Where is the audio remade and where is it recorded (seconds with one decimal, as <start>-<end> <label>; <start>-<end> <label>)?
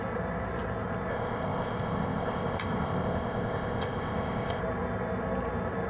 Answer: 0.0-1.1 recorded; 1.1-4.6 remade; 4.6-5.9 recorded